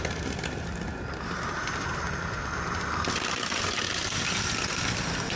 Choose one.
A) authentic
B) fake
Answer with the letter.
A